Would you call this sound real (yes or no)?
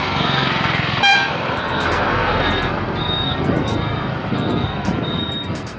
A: no